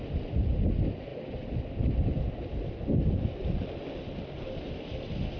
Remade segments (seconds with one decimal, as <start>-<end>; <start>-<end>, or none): none